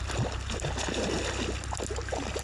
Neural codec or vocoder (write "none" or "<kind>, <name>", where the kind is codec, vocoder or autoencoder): none